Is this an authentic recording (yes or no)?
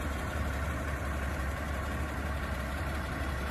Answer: no